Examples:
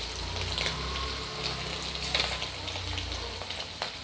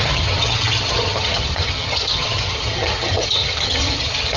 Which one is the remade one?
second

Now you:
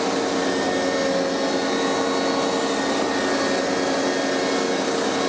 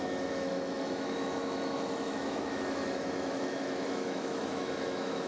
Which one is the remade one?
second